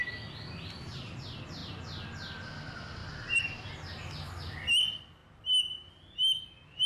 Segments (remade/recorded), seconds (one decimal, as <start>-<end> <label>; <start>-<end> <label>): 0.0-6.9 recorded